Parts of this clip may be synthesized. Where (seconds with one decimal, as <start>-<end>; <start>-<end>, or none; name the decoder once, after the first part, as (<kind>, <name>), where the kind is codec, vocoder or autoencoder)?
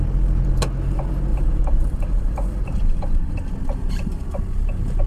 1.3-3.4 (vocoder, BigVGAN v2)